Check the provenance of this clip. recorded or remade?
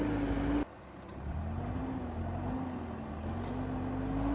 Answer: recorded